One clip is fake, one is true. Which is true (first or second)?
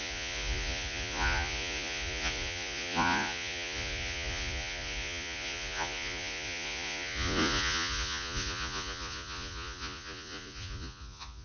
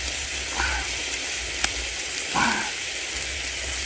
second